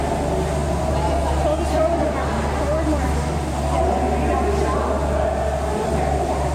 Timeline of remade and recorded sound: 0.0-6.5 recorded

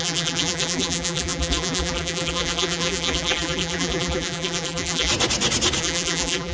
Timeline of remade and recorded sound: 0.0-5.1 remade; 5.1-5.8 recorded; 5.8-6.5 remade

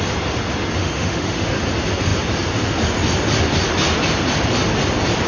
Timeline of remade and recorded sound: 0.0-0.8 recorded; 0.8-1.6 remade; 1.6-5.3 recorded

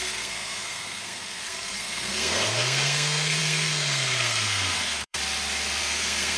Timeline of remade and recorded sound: 0.0-5.2 remade; 5.2-5.8 recorded; 5.8-6.4 remade

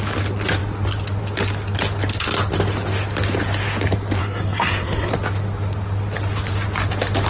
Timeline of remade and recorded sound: 0.0-4.2 recorded; 4.2-5.1 remade; 5.1-7.3 recorded

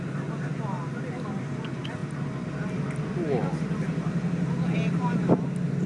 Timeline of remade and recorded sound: 0.0-5.9 recorded

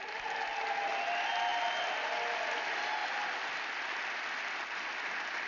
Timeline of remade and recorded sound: 0.0-5.5 recorded

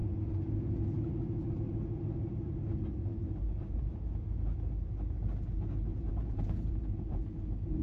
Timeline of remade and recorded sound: 0.0-1.5 remade; 1.5-3.1 recorded; 3.1-4.1 remade; 4.1-5.9 recorded; 5.9-7.8 remade